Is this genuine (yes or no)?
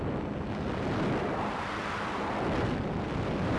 yes